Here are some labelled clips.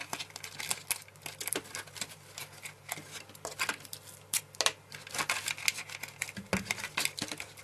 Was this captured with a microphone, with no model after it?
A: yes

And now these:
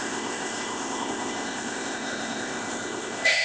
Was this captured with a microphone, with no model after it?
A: no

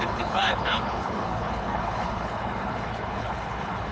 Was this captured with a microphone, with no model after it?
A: no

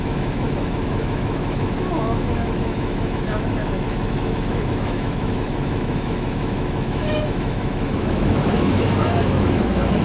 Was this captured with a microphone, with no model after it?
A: no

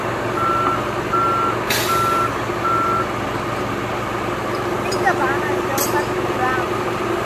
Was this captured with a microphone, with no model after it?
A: yes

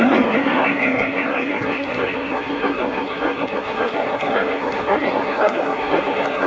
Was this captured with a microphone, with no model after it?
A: no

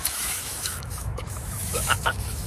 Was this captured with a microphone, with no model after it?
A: no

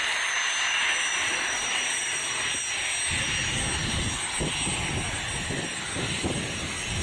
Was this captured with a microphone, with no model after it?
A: yes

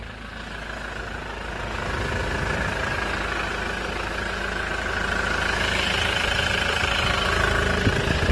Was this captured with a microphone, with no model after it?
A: yes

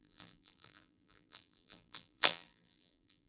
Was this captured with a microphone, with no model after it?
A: no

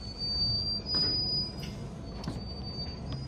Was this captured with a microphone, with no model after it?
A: yes